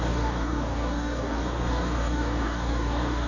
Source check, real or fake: fake